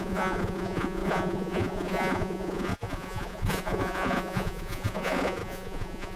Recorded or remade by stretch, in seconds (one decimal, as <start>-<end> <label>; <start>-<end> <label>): 0.0-6.2 remade